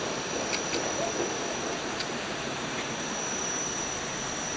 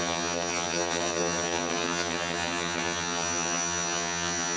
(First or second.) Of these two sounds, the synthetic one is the second